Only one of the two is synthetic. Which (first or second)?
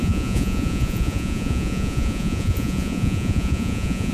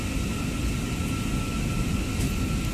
first